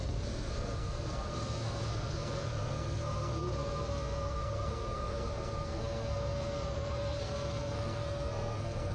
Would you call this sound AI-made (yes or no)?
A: yes